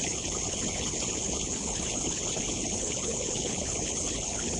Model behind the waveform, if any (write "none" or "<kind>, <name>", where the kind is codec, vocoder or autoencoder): codec, HILCodec